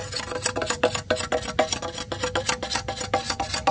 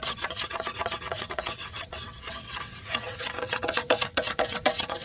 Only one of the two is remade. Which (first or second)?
second